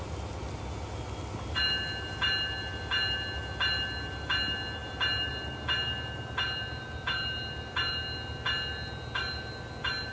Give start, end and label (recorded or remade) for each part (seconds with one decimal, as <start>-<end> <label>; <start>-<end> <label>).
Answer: 0.0-10.1 recorded